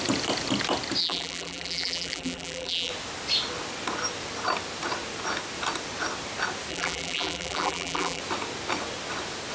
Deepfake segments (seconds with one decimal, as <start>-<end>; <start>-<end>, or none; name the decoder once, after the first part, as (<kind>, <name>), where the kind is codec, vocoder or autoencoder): 1.0-2.9 (vocoder, BigVGAN v2); 6.7-8.2